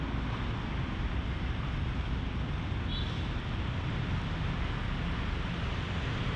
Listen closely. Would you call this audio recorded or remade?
recorded